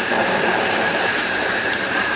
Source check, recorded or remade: remade